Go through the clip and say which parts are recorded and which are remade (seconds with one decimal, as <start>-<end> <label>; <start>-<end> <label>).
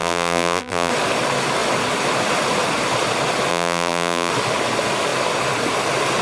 0.0-0.9 remade; 0.9-3.5 recorded; 3.5-4.3 remade; 4.3-6.2 recorded